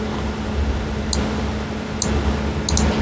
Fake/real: real